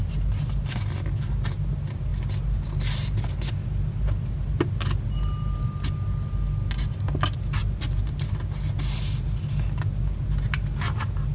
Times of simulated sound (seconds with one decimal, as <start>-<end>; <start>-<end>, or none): none